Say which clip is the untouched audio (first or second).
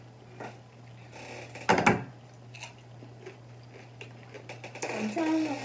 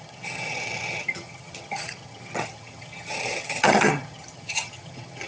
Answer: first